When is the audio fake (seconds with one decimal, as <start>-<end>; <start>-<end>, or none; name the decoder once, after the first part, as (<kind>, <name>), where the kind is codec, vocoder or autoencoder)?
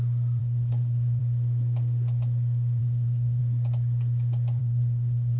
0.4-1.2 (codec, SNAC); 2.8-3.4; 4.6-5.4